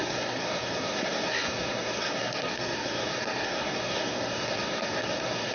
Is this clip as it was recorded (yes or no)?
no